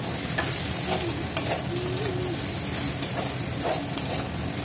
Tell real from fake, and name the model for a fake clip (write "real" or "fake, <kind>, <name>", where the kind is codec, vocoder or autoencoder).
real